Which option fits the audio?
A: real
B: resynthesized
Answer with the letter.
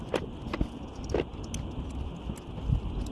A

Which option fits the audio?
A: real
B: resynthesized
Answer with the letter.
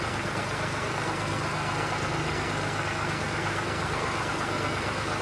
B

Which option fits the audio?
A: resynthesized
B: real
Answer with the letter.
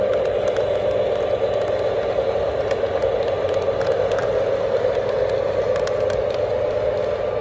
B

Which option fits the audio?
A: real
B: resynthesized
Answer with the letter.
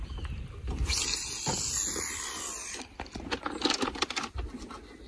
A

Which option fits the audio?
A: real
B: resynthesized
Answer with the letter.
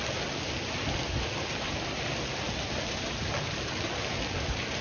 A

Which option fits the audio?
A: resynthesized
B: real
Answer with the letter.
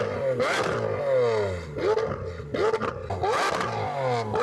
B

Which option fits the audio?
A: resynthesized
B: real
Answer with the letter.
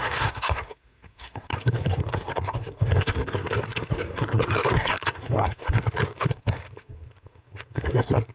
A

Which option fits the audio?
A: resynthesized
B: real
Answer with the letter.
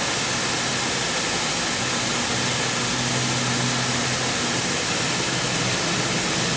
B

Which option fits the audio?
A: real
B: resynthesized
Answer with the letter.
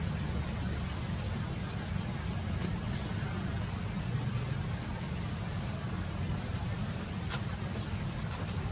A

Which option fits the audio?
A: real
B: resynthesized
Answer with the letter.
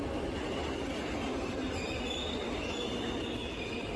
A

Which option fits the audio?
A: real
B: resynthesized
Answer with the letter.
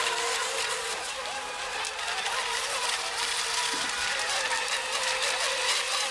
A